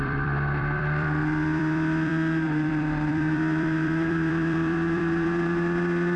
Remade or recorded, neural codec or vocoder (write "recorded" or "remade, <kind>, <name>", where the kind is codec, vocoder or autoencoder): remade, vocoder, BigVGAN v2